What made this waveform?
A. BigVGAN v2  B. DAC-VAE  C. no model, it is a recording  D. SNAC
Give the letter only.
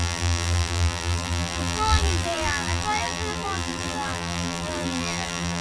A